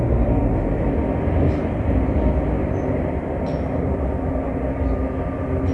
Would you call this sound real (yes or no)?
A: yes